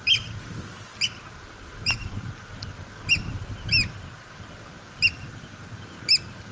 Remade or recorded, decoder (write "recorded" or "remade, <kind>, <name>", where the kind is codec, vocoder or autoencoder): recorded